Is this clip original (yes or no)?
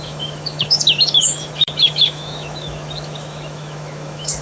no